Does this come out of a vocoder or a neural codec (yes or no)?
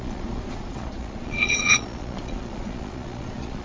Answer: yes